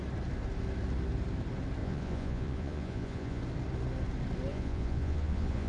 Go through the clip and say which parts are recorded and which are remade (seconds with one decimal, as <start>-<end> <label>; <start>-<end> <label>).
0.0-1.8 recorded; 1.8-3.4 remade; 3.4-4.5 recorded; 4.5-5.7 remade